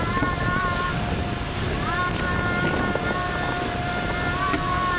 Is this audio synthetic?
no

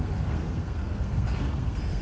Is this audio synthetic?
yes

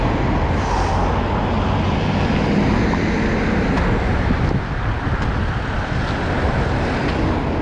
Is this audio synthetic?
no